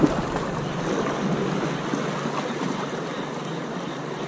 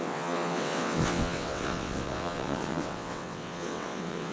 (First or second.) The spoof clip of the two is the second